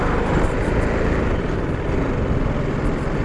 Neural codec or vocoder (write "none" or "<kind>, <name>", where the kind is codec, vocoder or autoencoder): none